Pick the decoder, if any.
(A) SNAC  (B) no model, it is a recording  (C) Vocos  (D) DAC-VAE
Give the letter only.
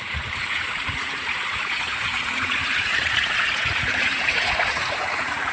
C